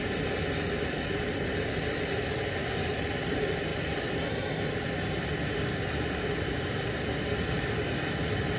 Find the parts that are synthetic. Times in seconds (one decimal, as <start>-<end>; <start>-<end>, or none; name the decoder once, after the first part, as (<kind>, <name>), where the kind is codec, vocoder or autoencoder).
none